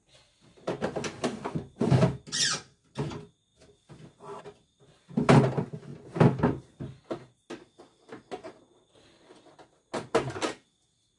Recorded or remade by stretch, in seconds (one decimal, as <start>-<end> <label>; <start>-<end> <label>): 0.0-11.2 recorded